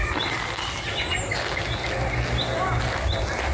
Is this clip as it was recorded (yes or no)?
yes